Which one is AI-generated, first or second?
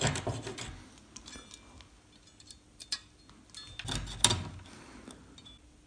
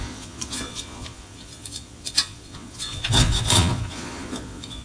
second